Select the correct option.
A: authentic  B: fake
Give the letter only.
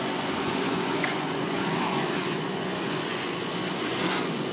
B